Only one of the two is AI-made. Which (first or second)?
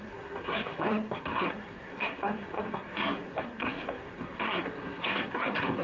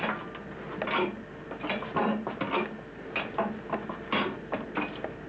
first